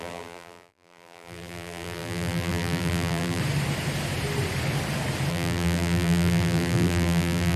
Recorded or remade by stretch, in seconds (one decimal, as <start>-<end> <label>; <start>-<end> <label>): 0.0-3.4 remade; 3.4-5.3 recorded; 5.3-7.6 remade